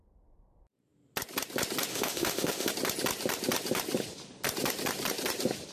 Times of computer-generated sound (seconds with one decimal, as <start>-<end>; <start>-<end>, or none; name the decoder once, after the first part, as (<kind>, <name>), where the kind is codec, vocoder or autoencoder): 1.9-2.7 (autoencoder, DAC-VAE)